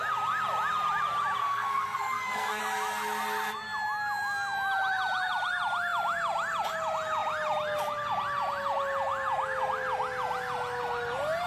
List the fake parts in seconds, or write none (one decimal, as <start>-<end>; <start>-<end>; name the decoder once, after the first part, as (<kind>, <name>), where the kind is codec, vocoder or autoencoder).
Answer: 1.4-2.6 (codec, SNAC)

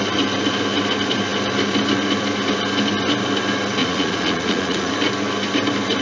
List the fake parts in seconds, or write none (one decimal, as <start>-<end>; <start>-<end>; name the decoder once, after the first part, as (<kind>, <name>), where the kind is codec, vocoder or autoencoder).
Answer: 3.8-4.9 (vocoder, Vocos)

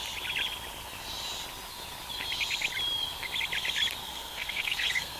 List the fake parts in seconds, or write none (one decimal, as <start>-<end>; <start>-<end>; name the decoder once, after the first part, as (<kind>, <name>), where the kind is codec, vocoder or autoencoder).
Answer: 4.0-5.2 (codec, SNAC)

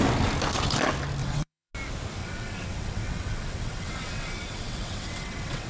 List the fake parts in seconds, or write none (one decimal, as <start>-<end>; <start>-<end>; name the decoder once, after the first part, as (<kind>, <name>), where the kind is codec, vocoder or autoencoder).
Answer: 1.2-1.7 (vocoder, WaveNeXt); 2.2-5.7